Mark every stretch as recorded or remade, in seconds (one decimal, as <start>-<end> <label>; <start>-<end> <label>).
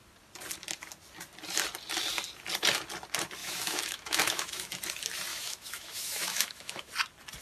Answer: 0.0-3.4 recorded; 3.4-4.7 remade; 4.7-5.3 recorded; 5.3-6.9 remade; 6.9-7.4 recorded